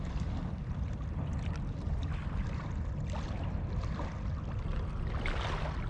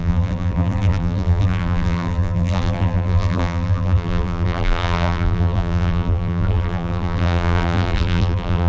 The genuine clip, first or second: first